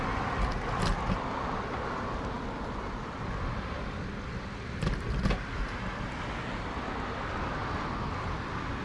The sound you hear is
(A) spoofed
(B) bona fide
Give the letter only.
B